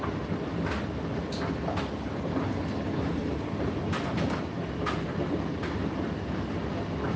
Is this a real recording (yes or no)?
yes